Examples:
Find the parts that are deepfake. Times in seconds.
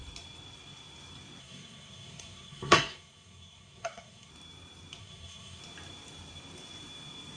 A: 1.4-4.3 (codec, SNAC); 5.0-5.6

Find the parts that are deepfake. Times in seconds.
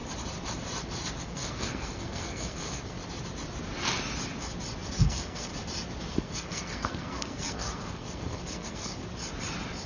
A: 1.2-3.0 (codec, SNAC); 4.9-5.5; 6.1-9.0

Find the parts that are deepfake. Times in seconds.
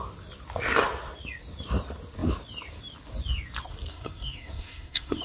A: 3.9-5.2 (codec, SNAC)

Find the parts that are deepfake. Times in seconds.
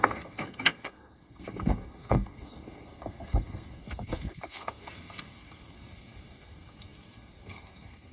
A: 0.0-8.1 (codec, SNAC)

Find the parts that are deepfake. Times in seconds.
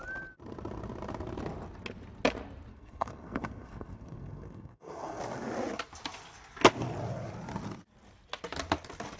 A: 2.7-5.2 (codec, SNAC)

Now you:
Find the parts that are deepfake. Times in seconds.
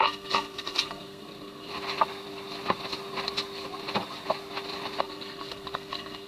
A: 0.0-1.7 (codec, SNAC); 5.0-6.3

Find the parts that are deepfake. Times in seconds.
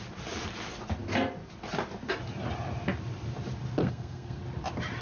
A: 3.8-4.4 (codec, SNAC)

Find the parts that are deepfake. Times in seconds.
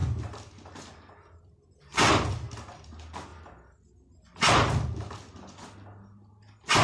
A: none